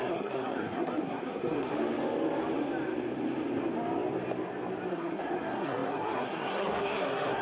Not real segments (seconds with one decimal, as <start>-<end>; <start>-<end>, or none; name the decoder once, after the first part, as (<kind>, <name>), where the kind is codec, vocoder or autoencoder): 0.0-1.7 (codec, SNAC); 4.9-7.4